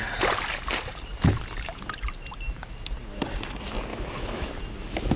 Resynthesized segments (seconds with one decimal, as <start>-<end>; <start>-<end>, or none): 3.9-4.5